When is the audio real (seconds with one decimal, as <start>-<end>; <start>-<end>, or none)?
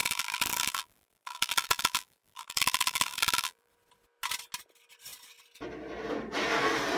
3.7-7.0